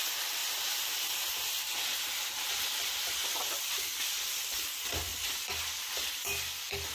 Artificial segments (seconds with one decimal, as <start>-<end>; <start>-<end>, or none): 0.4-1.2; 1.9-3.6